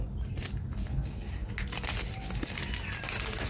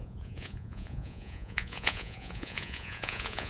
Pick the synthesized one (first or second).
second